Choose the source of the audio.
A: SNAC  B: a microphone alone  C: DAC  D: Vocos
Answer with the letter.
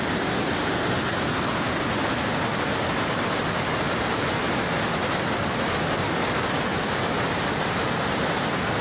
B